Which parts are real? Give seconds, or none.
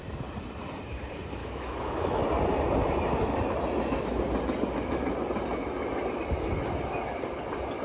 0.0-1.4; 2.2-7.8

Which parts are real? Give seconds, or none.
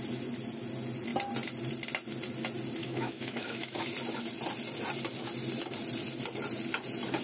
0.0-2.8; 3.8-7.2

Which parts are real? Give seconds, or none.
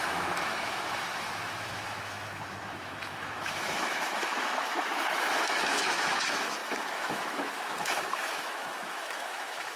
none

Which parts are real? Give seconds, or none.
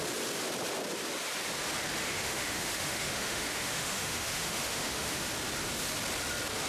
0.0-2.0; 5.3-6.7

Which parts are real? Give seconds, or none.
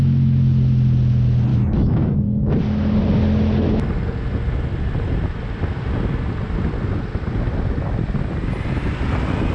0.0-1.5; 2.6-9.5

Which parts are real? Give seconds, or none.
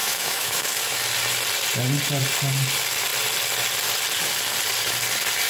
1.0-5.5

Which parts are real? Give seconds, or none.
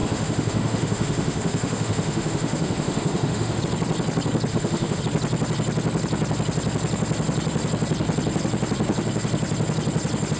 3.6-4.5; 5.0-10.4